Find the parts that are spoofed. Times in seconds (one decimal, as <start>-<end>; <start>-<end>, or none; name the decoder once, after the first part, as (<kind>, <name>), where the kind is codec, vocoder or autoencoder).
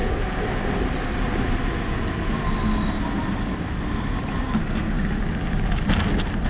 4.6-5.2 (codec, SNAC)